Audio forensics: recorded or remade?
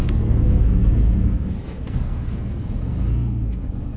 remade